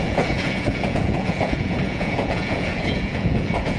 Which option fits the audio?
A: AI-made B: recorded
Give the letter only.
A